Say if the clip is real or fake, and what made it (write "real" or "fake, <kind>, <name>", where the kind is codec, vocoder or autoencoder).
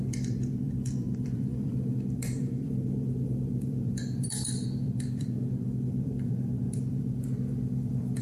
fake, vocoder, BigVGAN v2